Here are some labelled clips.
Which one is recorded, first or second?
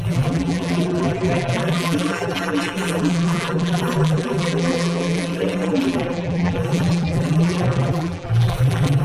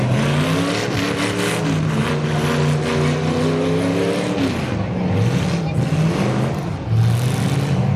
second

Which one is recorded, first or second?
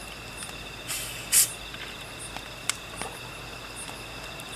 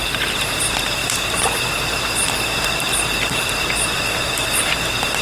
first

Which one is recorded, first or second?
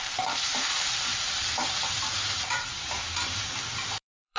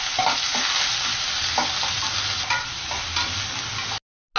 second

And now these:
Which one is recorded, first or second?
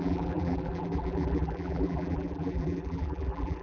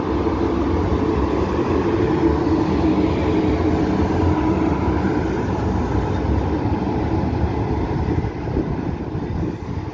second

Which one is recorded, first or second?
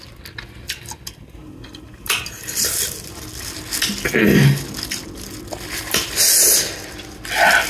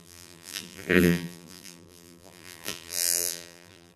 first